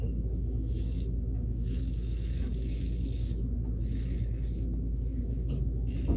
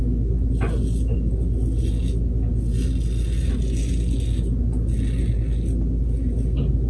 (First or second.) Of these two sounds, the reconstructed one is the first